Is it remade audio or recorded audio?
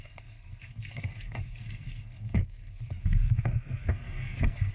remade